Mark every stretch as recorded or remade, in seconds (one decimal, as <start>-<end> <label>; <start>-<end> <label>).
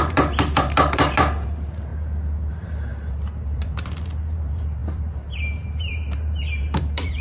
0.0-1.9 remade; 1.9-2.5 recorded; 2.5-7.2 remade